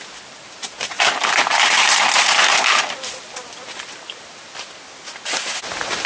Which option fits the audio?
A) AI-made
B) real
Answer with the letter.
B